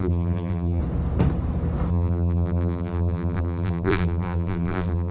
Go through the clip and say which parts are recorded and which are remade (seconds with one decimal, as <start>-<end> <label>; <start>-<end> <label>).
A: 0.0-0.8 remade; 0.8-1.9 recorded; 1.9-5.1 remade